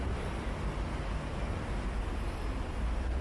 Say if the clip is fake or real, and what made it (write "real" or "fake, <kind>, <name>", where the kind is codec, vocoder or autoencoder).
real